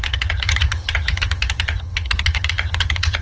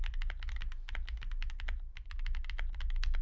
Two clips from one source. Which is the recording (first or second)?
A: second